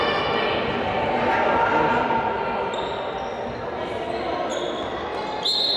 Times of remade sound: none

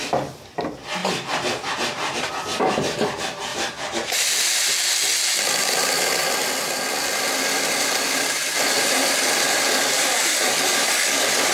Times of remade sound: 1.0-2.3 (vocoder, BigVGAN v2); 3.5-4.6

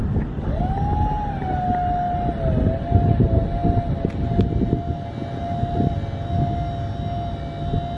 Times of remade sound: none

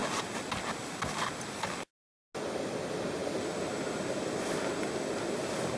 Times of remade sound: none

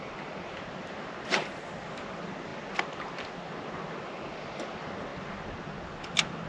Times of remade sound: none